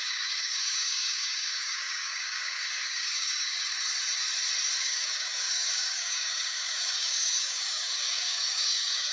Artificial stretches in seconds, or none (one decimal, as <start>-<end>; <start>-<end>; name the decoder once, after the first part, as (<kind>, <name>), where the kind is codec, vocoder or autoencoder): 0.0-3.5 (codec, DAC); 4.8-9.1